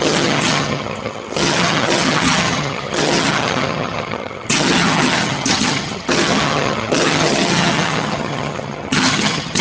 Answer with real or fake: fake